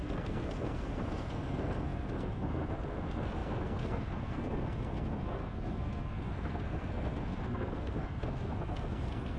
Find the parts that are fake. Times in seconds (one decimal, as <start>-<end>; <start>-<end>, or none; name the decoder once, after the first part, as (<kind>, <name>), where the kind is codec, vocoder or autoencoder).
0.0-9.4 (codec, SNAC)